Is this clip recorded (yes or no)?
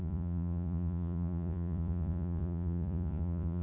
no